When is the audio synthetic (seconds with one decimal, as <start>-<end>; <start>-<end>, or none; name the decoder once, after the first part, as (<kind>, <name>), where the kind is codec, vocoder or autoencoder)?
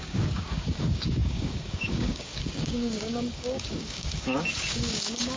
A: 0.0-5.4 (codec, DAC)